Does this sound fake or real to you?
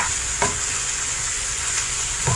fake